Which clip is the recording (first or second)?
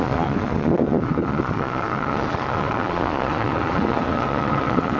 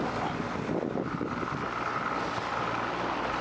second